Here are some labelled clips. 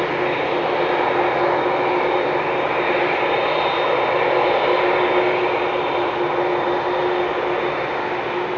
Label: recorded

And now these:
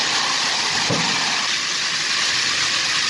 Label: remade